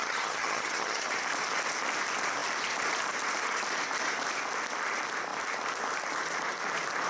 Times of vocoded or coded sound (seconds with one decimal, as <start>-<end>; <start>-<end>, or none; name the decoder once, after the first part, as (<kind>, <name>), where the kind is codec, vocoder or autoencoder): 0.0-1.1 (vocoder, HiFi-GAN)